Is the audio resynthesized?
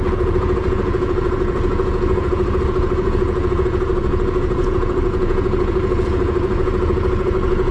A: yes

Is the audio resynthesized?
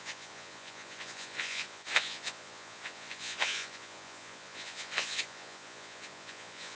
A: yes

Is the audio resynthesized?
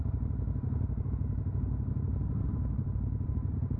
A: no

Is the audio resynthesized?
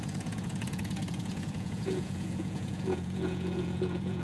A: yes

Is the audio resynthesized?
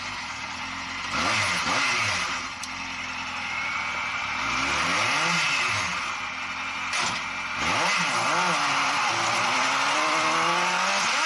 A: no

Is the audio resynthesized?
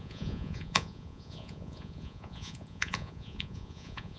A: yes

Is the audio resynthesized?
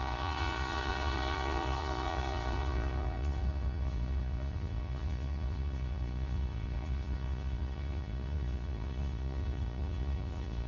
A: yes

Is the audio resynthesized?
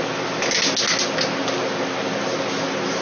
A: no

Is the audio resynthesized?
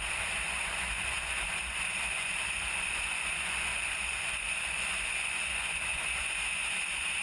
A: yes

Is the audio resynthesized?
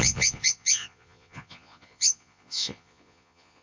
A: yes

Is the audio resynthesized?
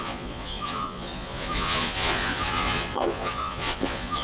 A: yes